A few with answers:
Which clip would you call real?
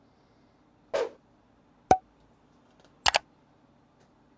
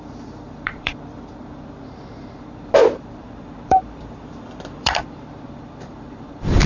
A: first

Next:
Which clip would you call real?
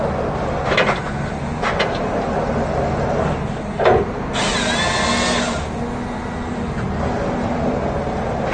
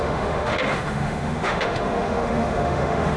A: first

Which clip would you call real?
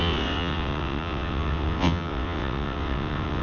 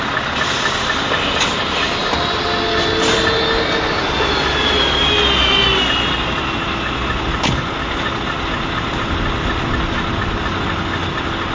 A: second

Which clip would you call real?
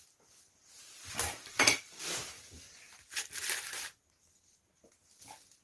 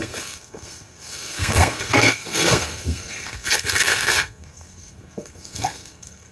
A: first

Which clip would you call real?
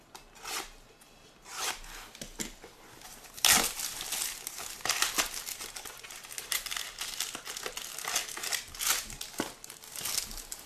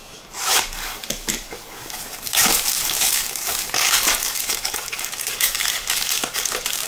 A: first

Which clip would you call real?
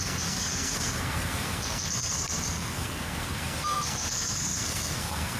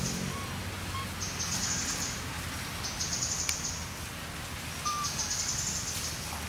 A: second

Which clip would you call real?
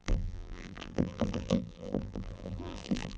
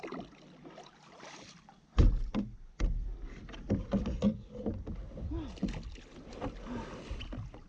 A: second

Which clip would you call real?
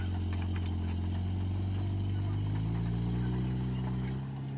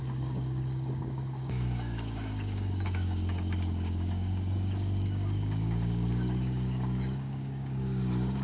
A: first